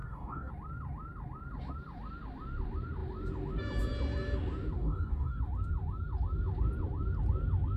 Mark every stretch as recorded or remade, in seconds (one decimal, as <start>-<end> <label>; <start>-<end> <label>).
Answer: 0.0-0.5 remade; 0.5-4.8 recorded; 4.8-5.4 remade; 5.4-7.8 recorded